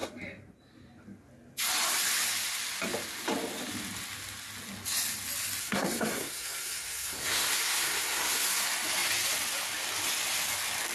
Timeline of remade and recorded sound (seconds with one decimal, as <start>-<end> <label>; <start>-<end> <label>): 0.0-5.6 recorded; 5.6-8.6 remade; 8.6-10.9 recorded

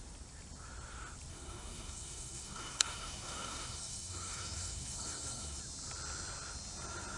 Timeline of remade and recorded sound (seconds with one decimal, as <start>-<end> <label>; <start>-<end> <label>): 0.0-1.3 recorded; 1.3-5.6 remade; 5.6-7.2 recorded

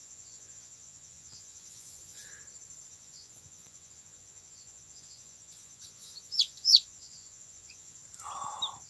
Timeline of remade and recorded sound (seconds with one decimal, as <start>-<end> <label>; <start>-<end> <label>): 0.0-2.2 remade; 2.2-2.9 recorded; 2.9-8.0 remade; 8.0-8.9 recorded

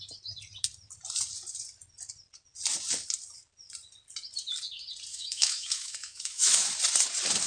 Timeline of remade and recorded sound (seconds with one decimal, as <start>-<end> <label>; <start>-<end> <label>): 0.0-5.1 recorded; 5.1-6.7 remade; 6.7-7.5 recorded